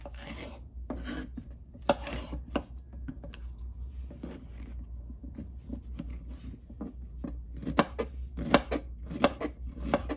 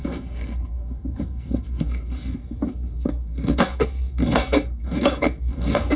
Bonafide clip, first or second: first